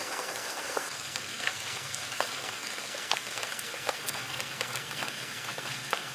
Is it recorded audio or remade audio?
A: remade